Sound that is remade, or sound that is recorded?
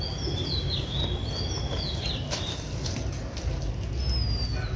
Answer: recorded